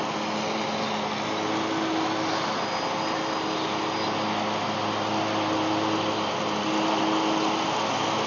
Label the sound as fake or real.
real